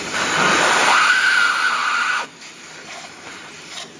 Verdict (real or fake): real